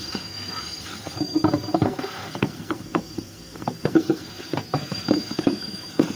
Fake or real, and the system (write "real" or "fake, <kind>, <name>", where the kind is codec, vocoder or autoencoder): fake, codec, SNAC